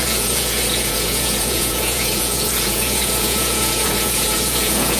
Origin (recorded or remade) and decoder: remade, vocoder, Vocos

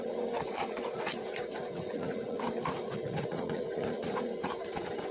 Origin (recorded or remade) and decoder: remade, vocoder, Vocos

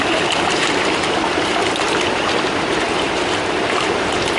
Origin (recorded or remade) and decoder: recorded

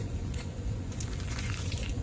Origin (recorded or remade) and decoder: remade, vocoder, Vocos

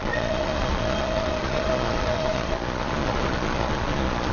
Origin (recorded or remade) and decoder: remade, vocoder, Vocos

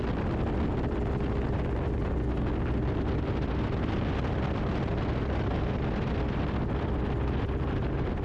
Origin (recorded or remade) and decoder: recorded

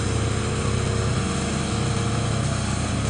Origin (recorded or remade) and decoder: recorded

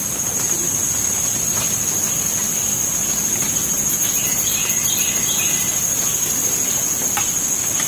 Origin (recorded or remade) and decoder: recorded